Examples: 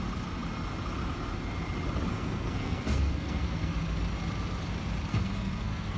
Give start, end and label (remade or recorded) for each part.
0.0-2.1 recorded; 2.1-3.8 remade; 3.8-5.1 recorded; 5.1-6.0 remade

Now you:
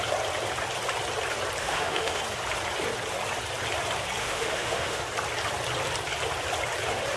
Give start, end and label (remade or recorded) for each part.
0.0-1.6 recorded; 1.6-2.2 remade; 2.2-4.2 recorded; 4.2-5.0 remade; 5.0-7.2 recorded

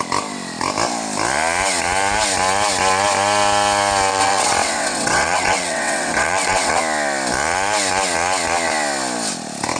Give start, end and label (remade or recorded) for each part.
0.0-4.1 recorded; 4.1-6.8 remade; 6.8-9.8 recorded

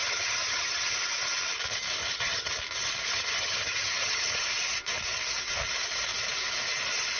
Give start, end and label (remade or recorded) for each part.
0.0-0.9 remade; 0.9-2.0 recorded; 2.0-2.5 remade; 2.5-3.1 recorded; 3.1-4.4 remade; 4.4-7.2 recorded

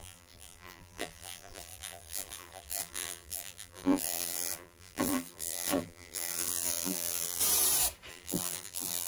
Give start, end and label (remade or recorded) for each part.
0.0-7.4 remade; 7.4-8.1 recorded; 8.1-9.1 remade

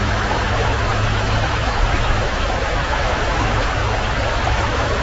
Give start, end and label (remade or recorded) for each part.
0.0-3.8 remade; 3.8-4.3 recorded; 4.3-5.0 remade